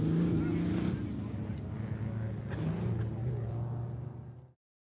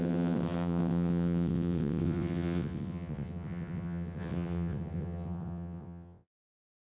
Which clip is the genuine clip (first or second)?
first